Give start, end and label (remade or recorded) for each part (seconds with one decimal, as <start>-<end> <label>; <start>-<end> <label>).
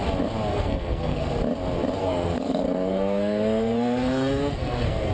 0.0-0.5 recorded; 0.5-1.3 remade; 1.3-2.0 recorded; 2.0-5.1 remade